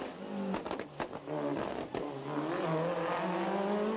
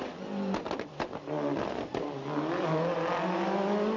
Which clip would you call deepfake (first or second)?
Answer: second